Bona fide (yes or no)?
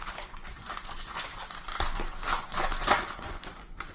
no